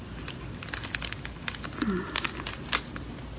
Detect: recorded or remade recorded